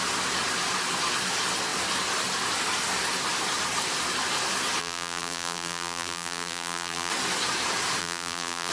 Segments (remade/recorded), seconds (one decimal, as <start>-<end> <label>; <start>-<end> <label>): 0.0-4.8 recorded; 4.8-7.1 remade; 7.1-8.0 recorded; 8.0-8.7 remade